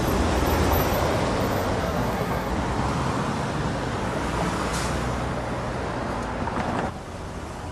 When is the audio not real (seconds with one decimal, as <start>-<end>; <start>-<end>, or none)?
1.8-2.5